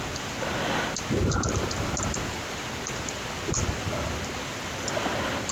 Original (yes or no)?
yes